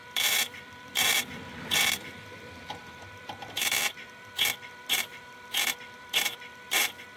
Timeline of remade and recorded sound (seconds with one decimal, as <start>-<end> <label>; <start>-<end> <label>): 0.0-2.4 remade; 2.4-2.8 recorded; 2.8-6.8 remade; 6.8-7.2 recorded